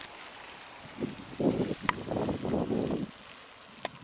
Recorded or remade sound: recorded